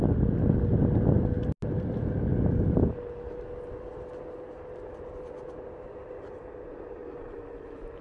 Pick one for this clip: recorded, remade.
recorded